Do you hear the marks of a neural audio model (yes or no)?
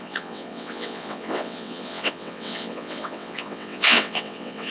yes